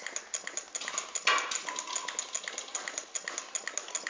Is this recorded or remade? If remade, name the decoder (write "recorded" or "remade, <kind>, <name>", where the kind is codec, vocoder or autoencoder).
recorded